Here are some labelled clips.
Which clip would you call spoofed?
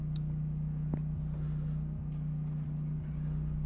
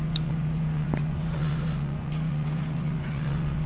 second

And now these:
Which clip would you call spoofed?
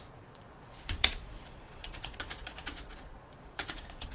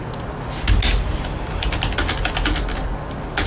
first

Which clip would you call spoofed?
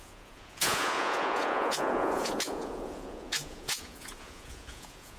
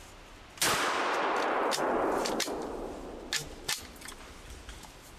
first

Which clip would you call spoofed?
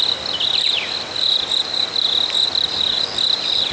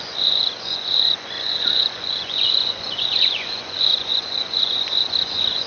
second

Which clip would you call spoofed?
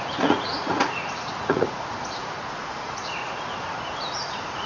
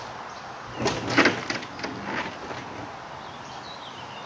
first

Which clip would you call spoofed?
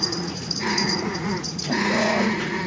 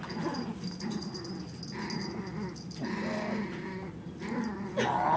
first